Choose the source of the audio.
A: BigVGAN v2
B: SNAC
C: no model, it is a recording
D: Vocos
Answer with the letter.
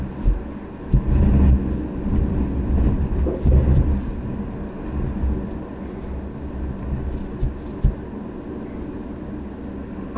C